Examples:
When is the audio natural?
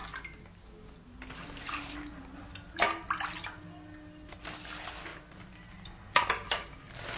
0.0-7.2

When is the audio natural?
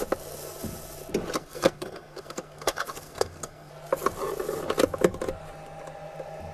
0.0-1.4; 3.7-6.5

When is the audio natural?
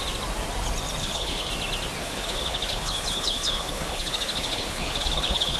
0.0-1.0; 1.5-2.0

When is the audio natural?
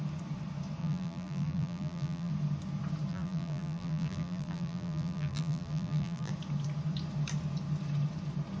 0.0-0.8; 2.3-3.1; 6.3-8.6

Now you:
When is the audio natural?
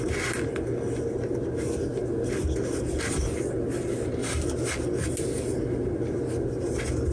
0.0-7.1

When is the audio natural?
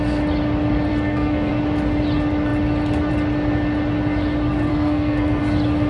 0.0-0.9; 1.5-4.7; 5.4-5.9